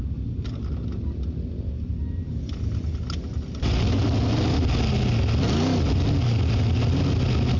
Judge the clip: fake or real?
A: real